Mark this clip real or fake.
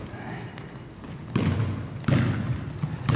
real